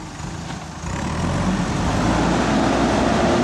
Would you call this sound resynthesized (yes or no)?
no